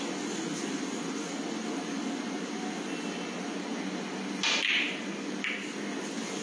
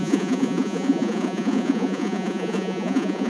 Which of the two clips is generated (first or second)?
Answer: second